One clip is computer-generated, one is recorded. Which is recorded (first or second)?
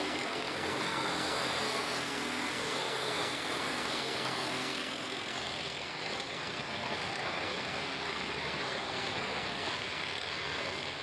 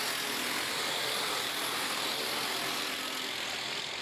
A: second